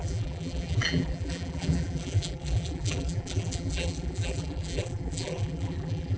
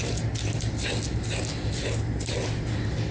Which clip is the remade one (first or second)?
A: first